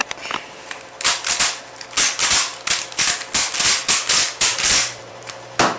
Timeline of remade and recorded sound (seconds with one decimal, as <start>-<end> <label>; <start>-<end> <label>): 0.0-5.8 recorded